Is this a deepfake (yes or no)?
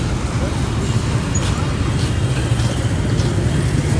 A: no